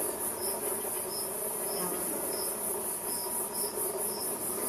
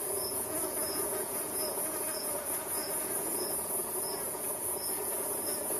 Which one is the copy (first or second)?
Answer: second